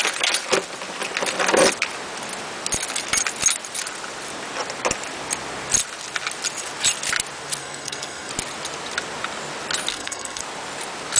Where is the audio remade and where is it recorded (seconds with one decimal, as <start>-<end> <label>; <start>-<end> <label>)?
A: 0.0-7.6 recorded; 7.6-8.3 remade; 8.3-9.9 recorded; 9.9-10.4 remade; 10.4-11.2 recorded